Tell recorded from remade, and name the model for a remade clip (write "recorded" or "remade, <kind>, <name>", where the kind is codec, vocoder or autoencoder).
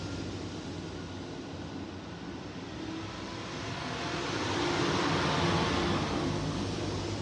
recorded